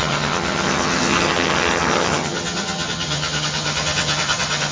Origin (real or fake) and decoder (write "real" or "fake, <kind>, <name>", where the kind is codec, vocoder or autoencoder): fake, vocoder, HiFi-GAN